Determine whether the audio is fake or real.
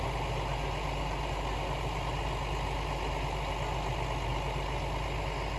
real